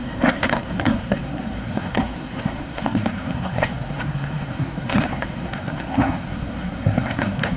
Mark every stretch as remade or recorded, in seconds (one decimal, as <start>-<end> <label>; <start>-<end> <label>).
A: 0.0-7.6 remade